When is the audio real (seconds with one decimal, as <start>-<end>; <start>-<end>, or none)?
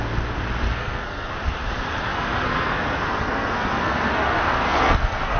0.0-0.7; 1.3-2.1